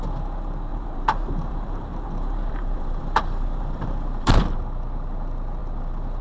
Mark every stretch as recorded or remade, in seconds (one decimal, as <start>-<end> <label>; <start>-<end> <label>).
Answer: 0.0-0.7 recorded; 0.7-4.4 remade; 4.4-6.2 recorded